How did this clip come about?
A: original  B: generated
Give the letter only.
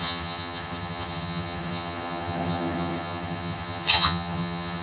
B